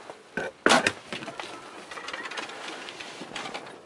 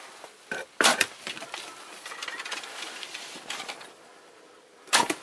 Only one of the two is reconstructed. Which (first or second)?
second